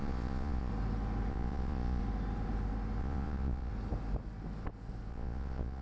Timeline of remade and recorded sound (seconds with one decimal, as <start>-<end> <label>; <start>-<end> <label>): 0.0-0.7 remade; 0.7-1.3 recorded; 1.3-2.0 remade; 2.0-3.0 recorded; 3.0-3.7 remade; 3.7-5.1 recorded; 5.1-5.8 remade